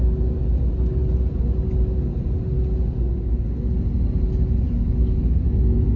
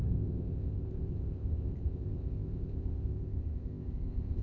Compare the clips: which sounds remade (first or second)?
second